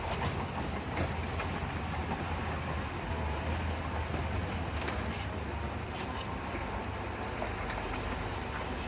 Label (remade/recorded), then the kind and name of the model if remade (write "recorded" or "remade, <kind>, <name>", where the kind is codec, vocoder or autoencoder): recorded